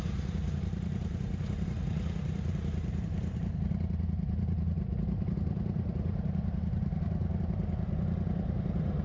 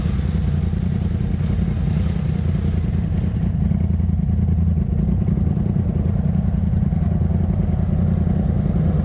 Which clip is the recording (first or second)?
second